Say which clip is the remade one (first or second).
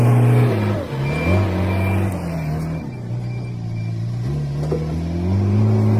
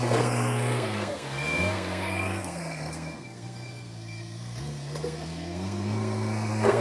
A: second